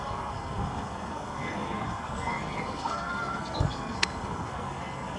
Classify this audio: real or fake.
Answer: fake